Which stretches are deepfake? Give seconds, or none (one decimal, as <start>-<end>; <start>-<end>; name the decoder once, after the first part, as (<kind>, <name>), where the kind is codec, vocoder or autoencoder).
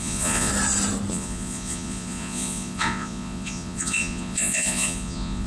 0.0-0.5 (vocoder, Vocos); 1.1-5.5